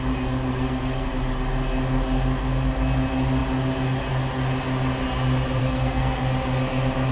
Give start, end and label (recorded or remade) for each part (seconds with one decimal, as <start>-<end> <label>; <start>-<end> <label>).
0.0-0.5 recorded; 0.5-1.1 remade; 1.1-5.6 recorded; 5.6-6.2 remade; 6.2-7.1 recorded